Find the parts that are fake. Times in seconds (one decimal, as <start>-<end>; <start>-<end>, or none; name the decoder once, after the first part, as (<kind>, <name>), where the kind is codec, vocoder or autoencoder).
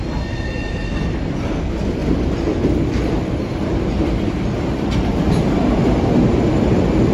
2.0-5.2 (vocoder, BigVGAN v2)